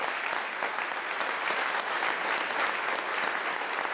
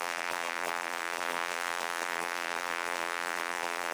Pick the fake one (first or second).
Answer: second